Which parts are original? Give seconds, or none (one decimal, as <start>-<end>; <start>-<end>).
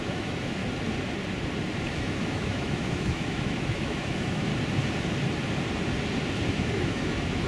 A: 0.6-1.8; 4.5-6.5